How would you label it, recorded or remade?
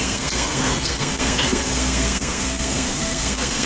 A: remade